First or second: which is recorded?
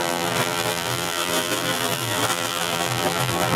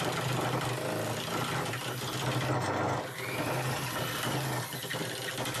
second